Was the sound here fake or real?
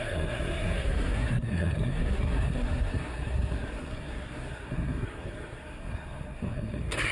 fake